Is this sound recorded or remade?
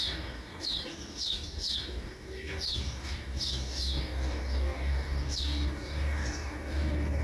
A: remade